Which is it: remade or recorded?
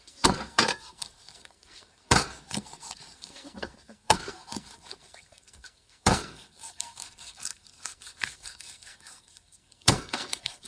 remade